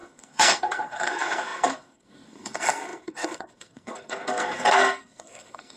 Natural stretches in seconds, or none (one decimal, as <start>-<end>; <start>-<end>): none